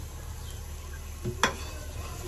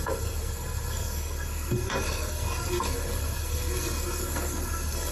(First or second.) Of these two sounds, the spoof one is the second